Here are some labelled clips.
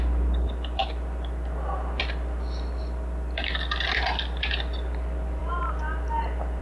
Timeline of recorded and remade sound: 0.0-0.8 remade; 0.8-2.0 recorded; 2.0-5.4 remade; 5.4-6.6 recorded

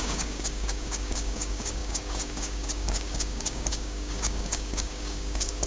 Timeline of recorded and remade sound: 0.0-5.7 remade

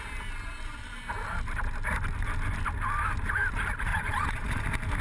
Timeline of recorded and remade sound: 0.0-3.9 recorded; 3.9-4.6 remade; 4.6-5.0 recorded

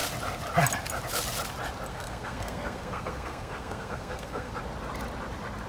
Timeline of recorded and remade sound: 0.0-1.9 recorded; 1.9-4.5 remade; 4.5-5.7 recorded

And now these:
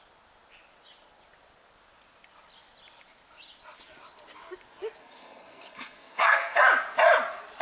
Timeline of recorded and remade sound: 0.0-5.0 recorded; 5.0-6.6 remade; 6.6-7.6 recorded

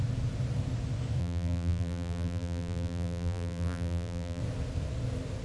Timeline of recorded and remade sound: 0.0-1.2 recorded; 1.2-4.4 remade; 4.4-5.4 recorded

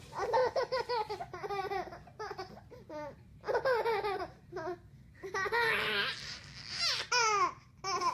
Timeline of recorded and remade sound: 0.0-8.1 recorded

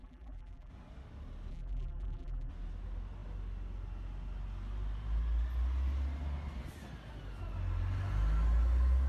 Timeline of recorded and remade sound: 0.0-0.7 remade; 0.7-1.5 recorded; 1.5-2.5 remade; 2.5-9.1 recorded